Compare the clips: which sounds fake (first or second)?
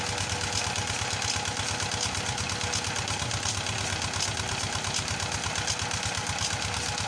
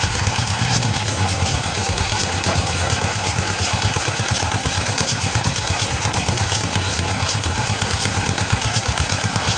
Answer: second